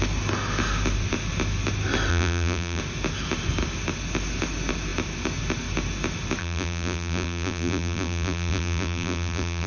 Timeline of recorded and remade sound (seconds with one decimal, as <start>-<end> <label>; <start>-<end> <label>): 0.0-2.1 recorded; 2.1-2.8 remade; 2.8-6.4 recorded; 6.4-9.7 remade